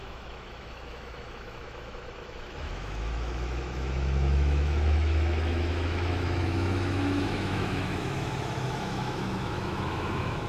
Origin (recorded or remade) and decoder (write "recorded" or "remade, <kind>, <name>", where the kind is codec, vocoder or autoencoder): remade, autoencoder, DAC-VAE